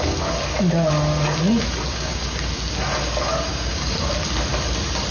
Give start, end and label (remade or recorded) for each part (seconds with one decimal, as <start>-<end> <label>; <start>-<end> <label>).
0.0-1.9 recorded; 1.9-2.4 remade; 2.4-3.5 recorded; 3.5-4.1 remade; 4.1-5.1 recorded